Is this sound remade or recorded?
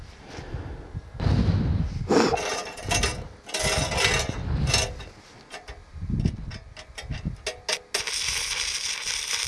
recorded